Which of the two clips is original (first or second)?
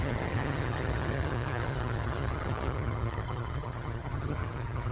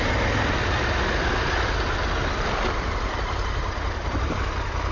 second